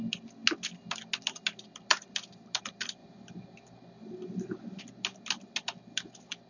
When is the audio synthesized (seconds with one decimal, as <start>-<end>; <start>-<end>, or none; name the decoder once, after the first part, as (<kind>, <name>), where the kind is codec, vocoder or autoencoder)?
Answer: none